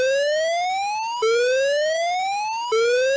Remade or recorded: recorded